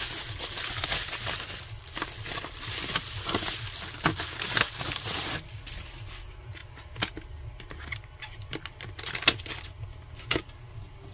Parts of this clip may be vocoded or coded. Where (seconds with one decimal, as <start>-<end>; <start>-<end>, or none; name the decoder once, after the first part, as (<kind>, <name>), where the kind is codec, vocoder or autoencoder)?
none